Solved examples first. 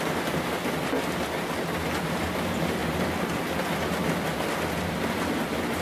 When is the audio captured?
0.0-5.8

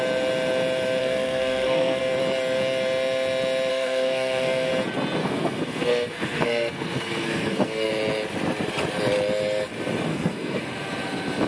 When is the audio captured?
0.0-1.0; 2.0-3.7; 4.7-5.2; 7.9-10.1; 10.6-11.5

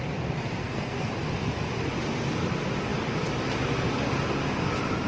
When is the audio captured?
0.0-0.6; 1.1-5.1

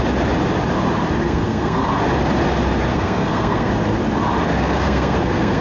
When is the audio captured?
0.0-1.2; 1.8-2.9; 3.7-4.5

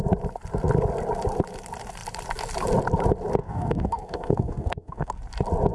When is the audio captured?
0.0-3.4; 5.2-5.7